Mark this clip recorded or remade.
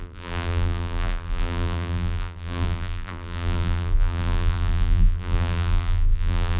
remade